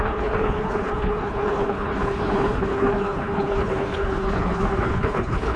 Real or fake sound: fake